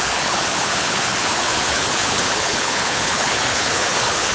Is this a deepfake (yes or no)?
yes